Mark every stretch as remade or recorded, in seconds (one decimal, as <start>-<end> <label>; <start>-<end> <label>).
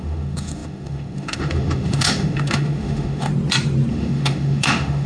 0.0-3.3 remade; 3.3-3.9 recorded; 3.9-5.1 remade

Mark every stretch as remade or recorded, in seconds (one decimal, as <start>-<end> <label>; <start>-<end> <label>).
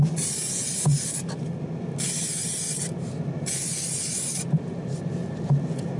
0.0-6.0 recorded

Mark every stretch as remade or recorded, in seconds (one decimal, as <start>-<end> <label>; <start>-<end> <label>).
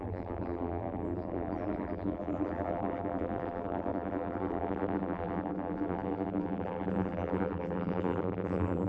0.0-8.9 remade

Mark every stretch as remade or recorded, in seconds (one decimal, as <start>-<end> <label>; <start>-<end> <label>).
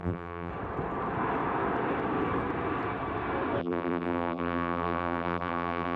0.0-0.5 remade; 0.5-3.6 recorded; 3.6-6.0 remade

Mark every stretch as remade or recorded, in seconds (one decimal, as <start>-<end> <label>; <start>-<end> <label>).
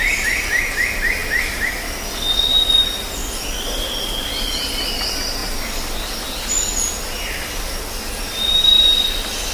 0.0-9.5 recorded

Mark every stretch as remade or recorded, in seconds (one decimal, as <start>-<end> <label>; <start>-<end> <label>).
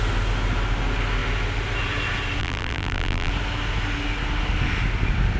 0.0-2.4 recorded; 2.4-3.3 remade; 3.3-5.4 recorded